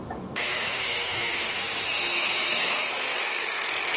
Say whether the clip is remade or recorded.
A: remade